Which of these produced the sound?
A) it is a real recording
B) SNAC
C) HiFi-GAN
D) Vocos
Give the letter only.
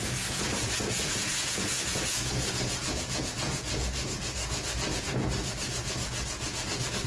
D